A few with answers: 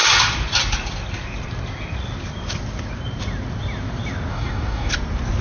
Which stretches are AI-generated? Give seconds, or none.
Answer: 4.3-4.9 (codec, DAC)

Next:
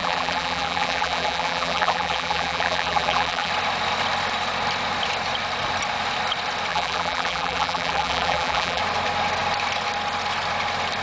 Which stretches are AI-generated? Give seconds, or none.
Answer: 0.0-3.5 (vocoder, BigVGAN v2); 6.7-8.8

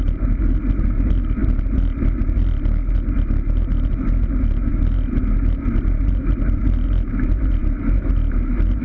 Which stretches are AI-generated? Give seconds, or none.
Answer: none

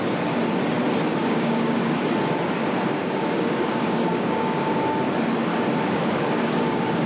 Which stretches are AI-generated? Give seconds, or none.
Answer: 1.1-2.0 (codec, DAC); 2.6-5.1; 5.5-7.1

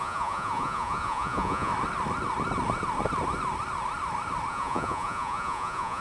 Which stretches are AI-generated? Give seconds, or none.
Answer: 0.0-1.7 (vocoder, Vocos); 4.5-6.0

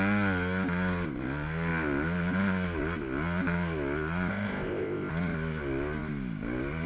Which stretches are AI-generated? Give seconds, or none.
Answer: 4.3-5.1 (codec, ZipCodec)

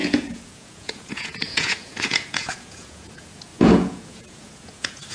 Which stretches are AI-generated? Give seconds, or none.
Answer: 0.0-5.1 (vocoder, Vocos)

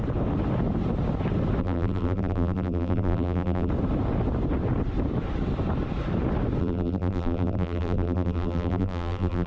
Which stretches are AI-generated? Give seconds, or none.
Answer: 1.6-3.7 (vocoder, BigVGAN v2); 6.6-9.5